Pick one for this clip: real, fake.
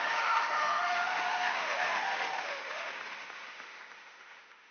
fake